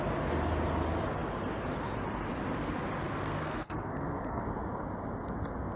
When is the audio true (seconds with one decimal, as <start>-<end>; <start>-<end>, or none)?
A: 0.0-3.2; 4.4-5.8